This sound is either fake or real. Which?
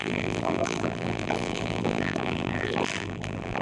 fake